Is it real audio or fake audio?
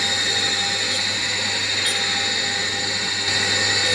real